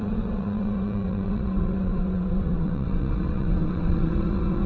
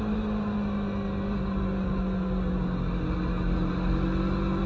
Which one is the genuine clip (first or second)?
second